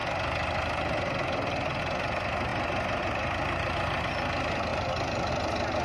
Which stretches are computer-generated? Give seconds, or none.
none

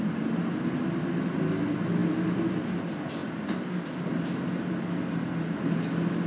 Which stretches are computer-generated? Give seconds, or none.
none

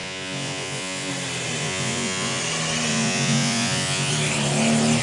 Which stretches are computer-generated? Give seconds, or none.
0.0-1.1 (vocoder, Vocos); 1.6-2.4; 2.9-4.1

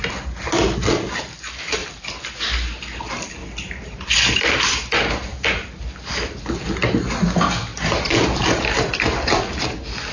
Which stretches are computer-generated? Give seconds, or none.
none